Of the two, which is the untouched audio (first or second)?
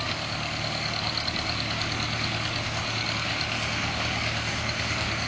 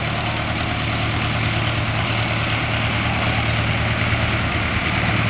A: second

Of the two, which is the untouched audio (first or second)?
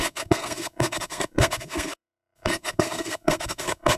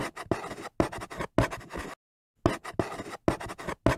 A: second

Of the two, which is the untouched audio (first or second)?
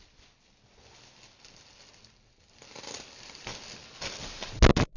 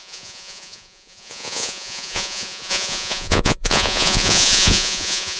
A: first